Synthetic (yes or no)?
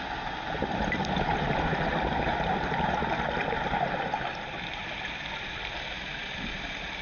no